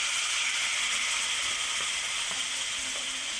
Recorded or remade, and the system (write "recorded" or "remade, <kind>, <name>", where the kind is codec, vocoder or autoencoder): recorded